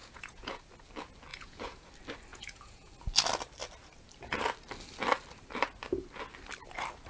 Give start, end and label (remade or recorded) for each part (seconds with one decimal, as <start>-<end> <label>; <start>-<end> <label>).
0.0-0.6 remade; 0.6-1.3 recorded; 1.3-1.9 remade; 1.9-2.3 recorded; 2.3-2.9 remade; 2.9-7.1 recorded

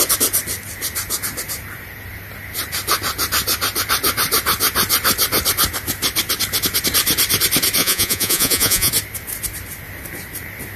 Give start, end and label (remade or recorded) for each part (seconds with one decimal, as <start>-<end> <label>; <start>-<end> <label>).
0.0-7.8 recorded; 7.8-8.9 remade; 8.9-10.8 recorded

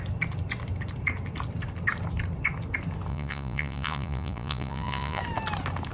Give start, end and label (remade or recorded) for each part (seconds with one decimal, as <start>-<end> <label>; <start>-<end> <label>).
0.0-3.1 recorded; 3.1-5.2 remade; 5.2-5.9 recorded

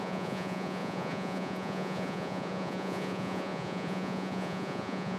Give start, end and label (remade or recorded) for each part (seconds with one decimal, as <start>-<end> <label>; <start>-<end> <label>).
0.0-5.2 remade

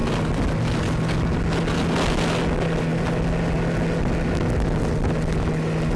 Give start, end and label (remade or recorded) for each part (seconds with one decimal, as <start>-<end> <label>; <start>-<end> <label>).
0.0-6.0 recorded